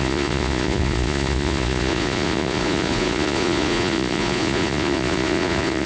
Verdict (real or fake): fake